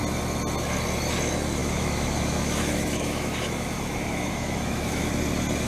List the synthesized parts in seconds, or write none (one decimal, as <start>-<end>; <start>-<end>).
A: 1.6-5.0